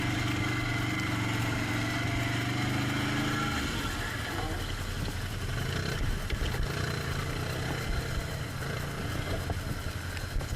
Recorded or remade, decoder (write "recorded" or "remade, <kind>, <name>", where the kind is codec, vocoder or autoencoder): recorded